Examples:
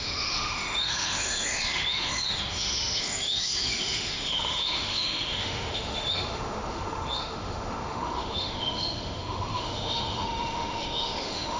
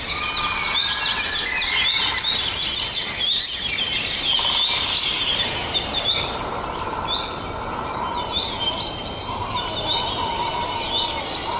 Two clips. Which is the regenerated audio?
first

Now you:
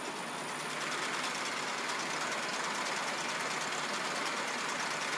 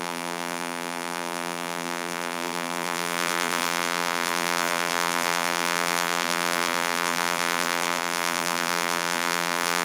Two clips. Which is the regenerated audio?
second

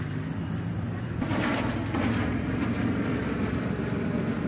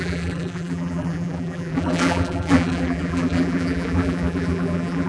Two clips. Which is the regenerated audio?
second